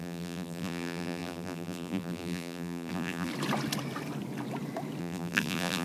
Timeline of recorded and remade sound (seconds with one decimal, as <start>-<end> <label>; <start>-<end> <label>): 0.0-3.3 remade; 3.3-5.0 recorded; 5.0-5.8 remade